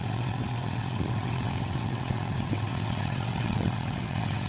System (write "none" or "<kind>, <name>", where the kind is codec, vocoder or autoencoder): vocoder, WaveNeXt